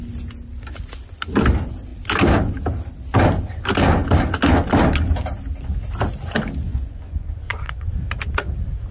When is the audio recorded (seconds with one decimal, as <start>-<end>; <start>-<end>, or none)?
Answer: 0.0-6.7; 7.9-8.9